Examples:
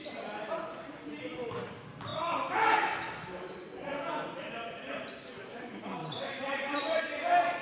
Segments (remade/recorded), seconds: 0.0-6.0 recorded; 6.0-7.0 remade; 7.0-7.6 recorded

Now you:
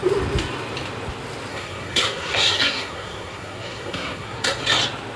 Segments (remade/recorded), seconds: 0.0-1.5 recorded; 1.5-4.6 remade; 4.6-5.2 recorded